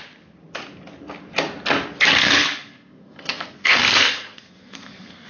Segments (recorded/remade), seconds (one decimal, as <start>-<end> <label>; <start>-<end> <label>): 0.0-2.2 recorded; 2.2-5.3 remade